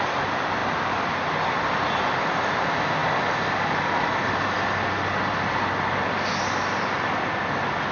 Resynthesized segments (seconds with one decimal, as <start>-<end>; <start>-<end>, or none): 0.6-1.1